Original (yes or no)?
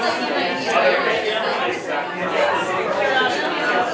yes